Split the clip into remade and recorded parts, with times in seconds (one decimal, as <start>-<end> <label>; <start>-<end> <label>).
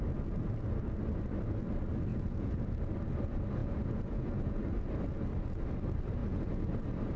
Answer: 0.0-2.1 recorded; 2.1-2.6 remade; 2.6-3.6 recorded; 3.6-4.6 remade; 4.6-6.2 recorded; 6.2-6.7 remade; 6.7-7.2 recorded